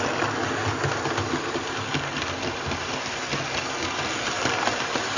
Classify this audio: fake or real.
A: real